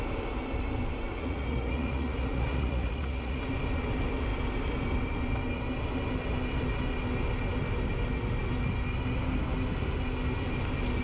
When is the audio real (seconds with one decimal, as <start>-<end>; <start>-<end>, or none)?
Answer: 0.0-1.1; 3.4-11.0